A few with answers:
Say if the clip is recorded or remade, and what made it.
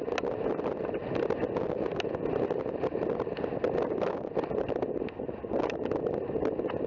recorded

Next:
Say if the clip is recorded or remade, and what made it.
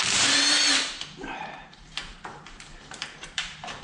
remade, vocoder, BigVGAN v2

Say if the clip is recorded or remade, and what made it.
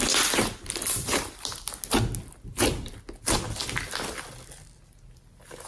recorded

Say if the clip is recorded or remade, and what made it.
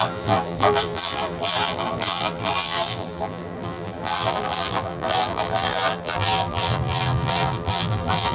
remade, vocoder, BigVGAN v2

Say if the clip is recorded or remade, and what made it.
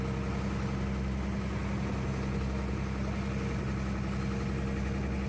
recorded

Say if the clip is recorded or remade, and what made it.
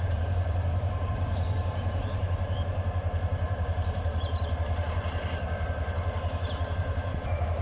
remade, vocoder, BigVGAN v2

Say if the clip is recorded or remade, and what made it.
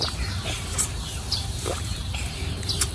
remade, vocoder, BigVGAN v2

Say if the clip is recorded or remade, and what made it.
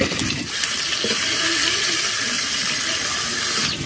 remade, vocoder, BigVGAN v2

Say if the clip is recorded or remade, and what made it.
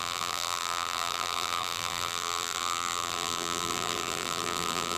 remade, vocoder, BigVGAN v2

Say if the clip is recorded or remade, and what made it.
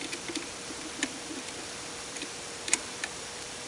remade, vocoder, BigVGAN v2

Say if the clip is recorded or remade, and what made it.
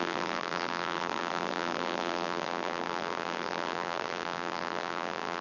remade, vocoder, BigVGAN v2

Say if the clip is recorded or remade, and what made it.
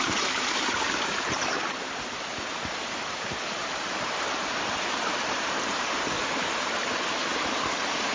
remade, vocoder, BigVGAN v2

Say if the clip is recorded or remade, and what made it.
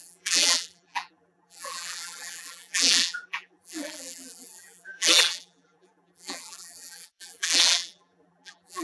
remade, vocoder, BigVGAN v2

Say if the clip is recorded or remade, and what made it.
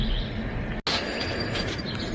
recorded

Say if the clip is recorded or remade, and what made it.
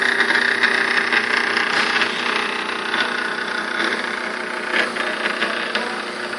recorded